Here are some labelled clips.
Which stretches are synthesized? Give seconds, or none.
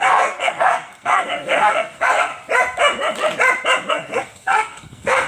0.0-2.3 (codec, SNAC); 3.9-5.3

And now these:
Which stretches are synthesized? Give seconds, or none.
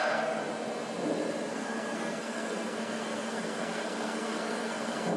0.0-0.4 (codec, SNAC); 1.5-5.2